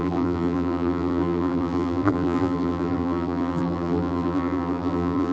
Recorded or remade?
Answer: remade